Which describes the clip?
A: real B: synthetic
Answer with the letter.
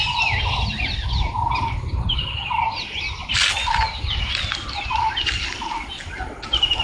A